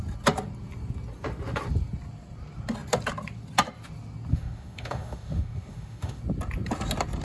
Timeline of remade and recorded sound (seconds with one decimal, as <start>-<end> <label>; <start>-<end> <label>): 0.0-4.3 recorded; 4.3-6.2 remade; 6.2-7.2 recorded